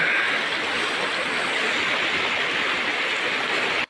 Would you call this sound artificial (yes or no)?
no